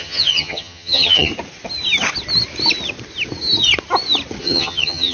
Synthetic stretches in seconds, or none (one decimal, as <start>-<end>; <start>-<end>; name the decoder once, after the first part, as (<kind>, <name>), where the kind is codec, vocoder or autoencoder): 0.0-1.3 (vocoder, HiFi-GAN); 4.4-5.1